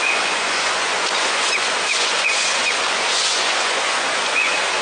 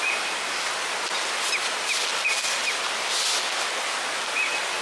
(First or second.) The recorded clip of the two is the second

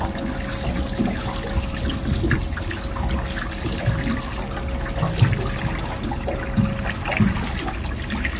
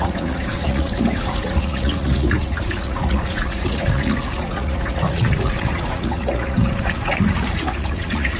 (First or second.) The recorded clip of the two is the first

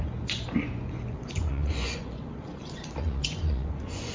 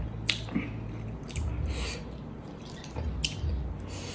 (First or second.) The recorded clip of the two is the second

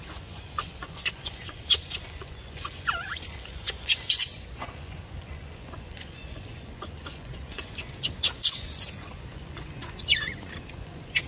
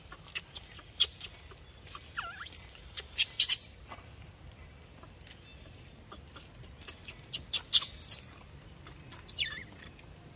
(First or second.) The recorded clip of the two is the second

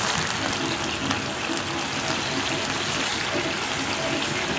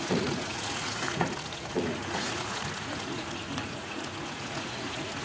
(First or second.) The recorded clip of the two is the first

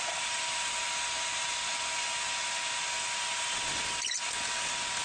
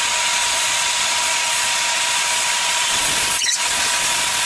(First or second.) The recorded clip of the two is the first